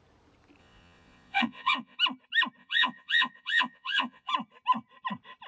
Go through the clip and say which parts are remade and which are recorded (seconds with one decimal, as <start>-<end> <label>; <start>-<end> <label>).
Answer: 0.0-0.6 recorded; 0.6-2.0 remade; 2.0-2.6 recorded; 2.6-4.3 remade; 4.3-5.5 recorded